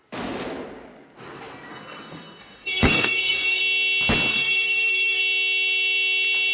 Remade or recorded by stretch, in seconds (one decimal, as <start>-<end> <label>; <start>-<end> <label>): 0.0-1.7 recorded; 1.7-3.6 remade; 3.6-4.3 recorded; 4.3-5.2 remade; 5.2-6.5 recorded